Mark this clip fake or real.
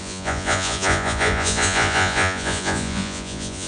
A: fake